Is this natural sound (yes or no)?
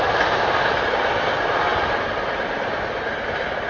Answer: yes